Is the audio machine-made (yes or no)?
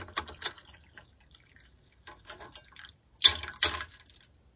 no